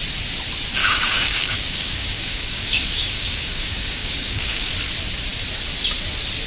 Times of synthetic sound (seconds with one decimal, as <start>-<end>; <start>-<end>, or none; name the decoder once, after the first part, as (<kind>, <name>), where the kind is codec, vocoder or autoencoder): 0.8-4.7 (codec, DAC)